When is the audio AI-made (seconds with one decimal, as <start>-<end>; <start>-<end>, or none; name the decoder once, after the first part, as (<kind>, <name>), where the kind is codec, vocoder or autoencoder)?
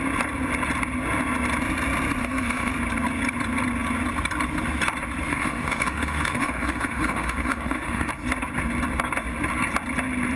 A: 2.2-2.7 (autoencoder, DAC-VAE); 5.3-8.1